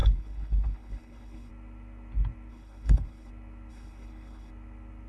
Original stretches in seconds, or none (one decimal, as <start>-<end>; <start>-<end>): 1.5-2.5; 3.3-3.7; 4.5-5.1